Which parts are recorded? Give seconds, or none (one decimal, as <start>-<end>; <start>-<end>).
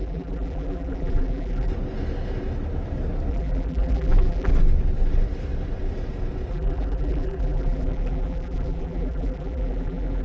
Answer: 1.7-3.3; 4.5-6.5